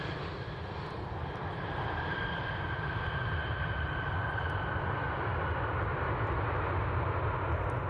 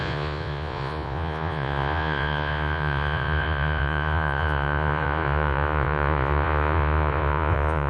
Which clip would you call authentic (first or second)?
first